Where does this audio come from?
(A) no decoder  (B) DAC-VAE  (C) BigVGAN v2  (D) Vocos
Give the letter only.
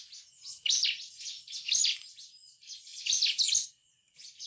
A